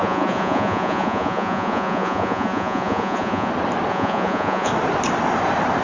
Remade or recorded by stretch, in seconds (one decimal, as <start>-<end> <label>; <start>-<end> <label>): 0.0-3.5 remade; 3.5-3.9 recorded; 3.9-4.7 remade; 4.7-5.8 recorded